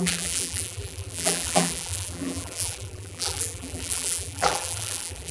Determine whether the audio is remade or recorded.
remade